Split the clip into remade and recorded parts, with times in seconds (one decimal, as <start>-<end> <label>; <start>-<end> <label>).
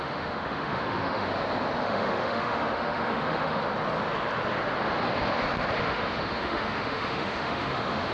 0.0-1.3 remade; 1.3-1.8 recorded; 1.8-3.6 remade; 3.6-5.8 recorded; 5.8-8.1 remade